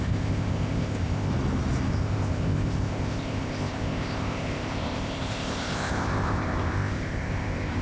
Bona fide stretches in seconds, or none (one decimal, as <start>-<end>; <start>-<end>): 1.3-1.9